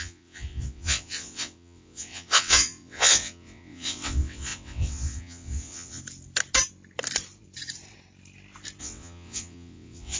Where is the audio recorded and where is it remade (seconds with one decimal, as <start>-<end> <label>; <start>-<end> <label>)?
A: 0.0-6.0 remade; 6.0-8.8 recorded; 8.8-10.2 remade